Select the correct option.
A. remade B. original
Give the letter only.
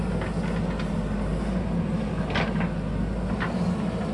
B